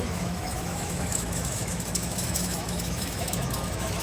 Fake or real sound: fake